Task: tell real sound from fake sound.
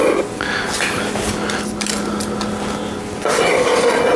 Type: real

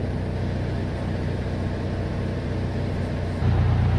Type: real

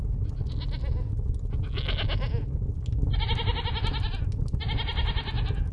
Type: real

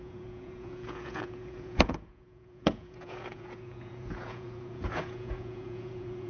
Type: fake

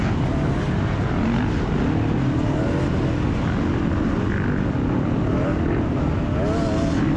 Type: real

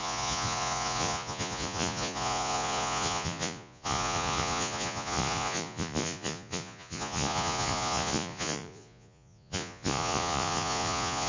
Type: fake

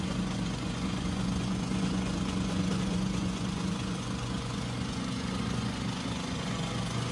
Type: fake